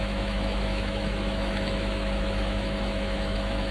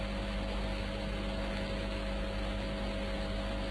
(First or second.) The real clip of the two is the second